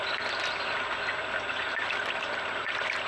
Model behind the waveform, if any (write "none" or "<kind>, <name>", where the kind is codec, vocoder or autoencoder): none